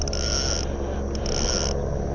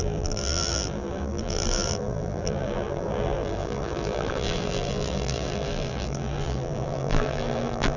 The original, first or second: first